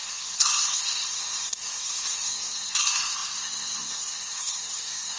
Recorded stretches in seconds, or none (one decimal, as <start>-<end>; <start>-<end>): none